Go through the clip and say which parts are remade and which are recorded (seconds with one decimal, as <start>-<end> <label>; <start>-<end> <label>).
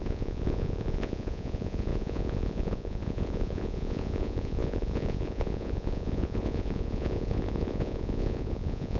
0.0-9.0 remade